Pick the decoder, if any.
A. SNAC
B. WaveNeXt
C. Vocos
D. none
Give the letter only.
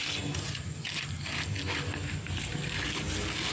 D